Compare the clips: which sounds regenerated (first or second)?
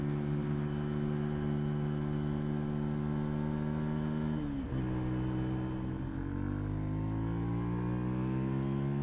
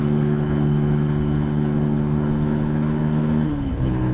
second